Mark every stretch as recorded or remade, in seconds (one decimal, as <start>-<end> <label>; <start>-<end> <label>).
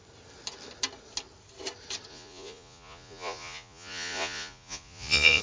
0.0-2.1 recorded; 2.1-5.4 remade